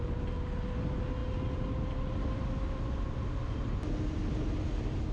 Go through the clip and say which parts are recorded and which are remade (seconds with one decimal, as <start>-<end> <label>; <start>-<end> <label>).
0.0-5.1 recorded